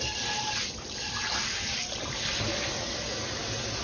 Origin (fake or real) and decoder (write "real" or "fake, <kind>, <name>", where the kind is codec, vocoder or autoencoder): real